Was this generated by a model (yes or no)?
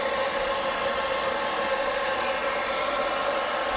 no